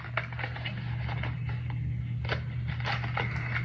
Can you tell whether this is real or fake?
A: real